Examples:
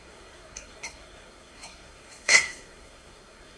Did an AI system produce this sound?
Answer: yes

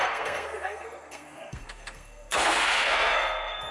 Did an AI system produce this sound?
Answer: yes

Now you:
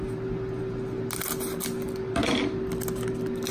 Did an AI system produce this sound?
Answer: no